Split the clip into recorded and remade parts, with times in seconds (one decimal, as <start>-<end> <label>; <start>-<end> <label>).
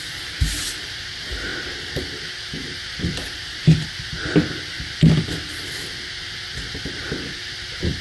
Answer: 0.0-8.0 recorded